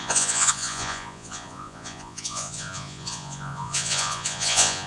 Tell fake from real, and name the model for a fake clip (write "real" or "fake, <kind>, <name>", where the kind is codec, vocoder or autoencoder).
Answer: fake, vocoder, Vocos